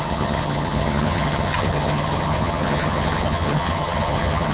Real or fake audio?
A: fake